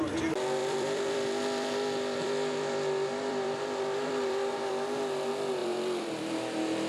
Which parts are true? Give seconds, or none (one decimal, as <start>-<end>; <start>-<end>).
0.0-0.6; 4.7-5.6